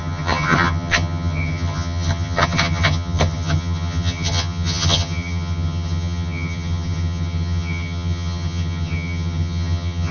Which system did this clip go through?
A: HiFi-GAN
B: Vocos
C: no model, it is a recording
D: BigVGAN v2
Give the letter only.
A